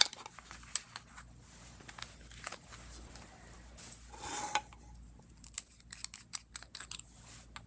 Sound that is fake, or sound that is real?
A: real